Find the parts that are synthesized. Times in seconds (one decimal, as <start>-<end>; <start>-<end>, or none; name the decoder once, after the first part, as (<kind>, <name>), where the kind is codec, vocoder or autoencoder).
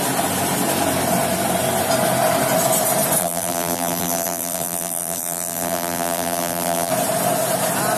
3.2-6.9 (vocoder, BigVGAN v2)